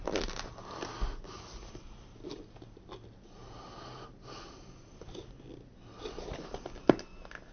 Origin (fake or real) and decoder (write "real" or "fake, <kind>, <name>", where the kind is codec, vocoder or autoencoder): real